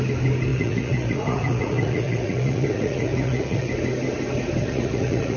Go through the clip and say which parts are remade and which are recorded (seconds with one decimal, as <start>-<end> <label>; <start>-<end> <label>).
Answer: 0.0-0.5 recorded; 0.5-3.7 remade; 3.7-4.6 recorded; 4.6-5.4 remade